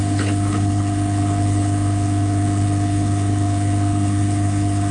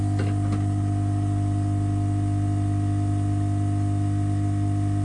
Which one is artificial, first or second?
first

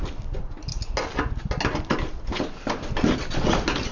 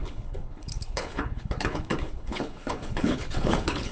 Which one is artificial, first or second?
second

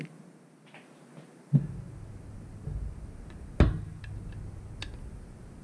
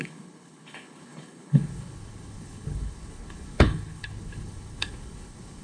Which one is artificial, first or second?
second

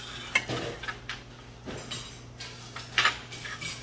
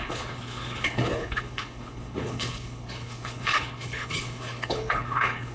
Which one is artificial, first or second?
second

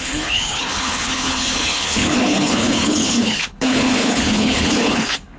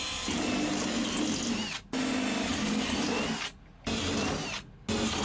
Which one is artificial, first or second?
first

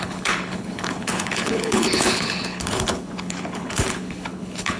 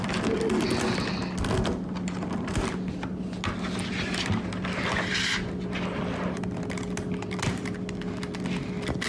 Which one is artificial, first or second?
first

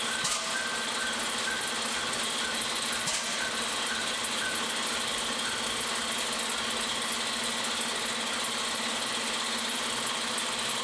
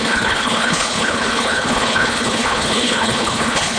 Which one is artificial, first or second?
second